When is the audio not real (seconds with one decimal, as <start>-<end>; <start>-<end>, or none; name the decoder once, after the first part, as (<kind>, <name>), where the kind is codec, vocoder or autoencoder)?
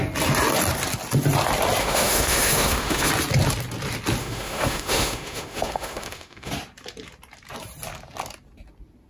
1.8-3.1 (autoencoder, DAC-VAE); 4.2-6.5